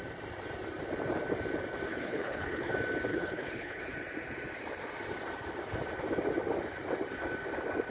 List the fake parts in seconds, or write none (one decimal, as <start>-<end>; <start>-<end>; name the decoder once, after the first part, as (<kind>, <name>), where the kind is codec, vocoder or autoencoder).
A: 1.9-2.7 (codec, HILCodec); 3.1-3.8